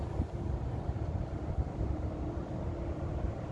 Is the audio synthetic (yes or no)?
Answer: no